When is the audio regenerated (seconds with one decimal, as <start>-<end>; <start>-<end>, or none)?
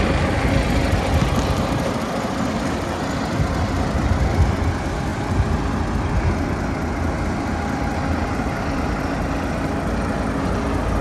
none